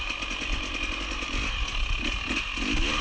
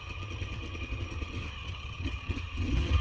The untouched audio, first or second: first